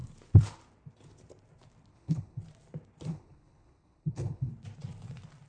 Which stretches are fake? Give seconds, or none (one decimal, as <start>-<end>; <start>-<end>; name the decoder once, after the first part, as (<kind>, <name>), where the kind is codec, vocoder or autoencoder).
1.9-2.4 (codec, HILCodec); 3.1-4.5